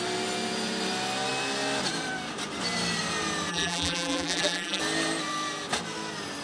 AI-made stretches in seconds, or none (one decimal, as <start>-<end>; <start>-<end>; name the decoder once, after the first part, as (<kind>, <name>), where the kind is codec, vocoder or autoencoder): 3.5-4.8 (vocoder, BigVGAN v2)